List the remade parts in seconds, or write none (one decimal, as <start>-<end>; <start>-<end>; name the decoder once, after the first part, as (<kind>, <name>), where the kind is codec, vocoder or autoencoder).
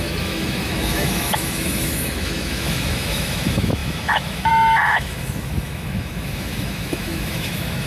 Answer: 0.0-7.9 (autoencoder, DAC-VAE)